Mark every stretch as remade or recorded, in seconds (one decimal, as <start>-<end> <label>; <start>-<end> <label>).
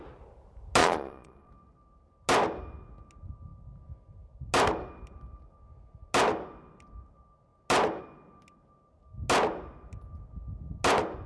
0.0-0.8 recorded; 0.8-1.5 remade; 1.5-11.3 recorded